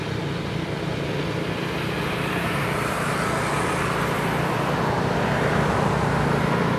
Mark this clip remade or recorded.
recorded